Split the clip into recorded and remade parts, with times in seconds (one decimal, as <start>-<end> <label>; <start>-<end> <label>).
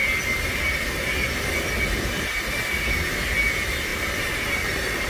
0.0-3.9 recorded; 3.9-5.1 remade